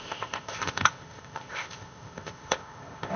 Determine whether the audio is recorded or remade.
remade